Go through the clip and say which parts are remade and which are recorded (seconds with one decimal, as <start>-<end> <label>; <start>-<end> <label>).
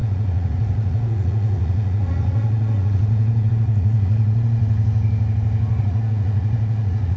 0.0-4.6 remade; 4.6-5.8 recorded; 5.8-7.2 remade